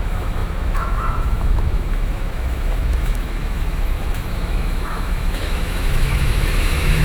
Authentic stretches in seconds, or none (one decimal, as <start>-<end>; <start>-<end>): none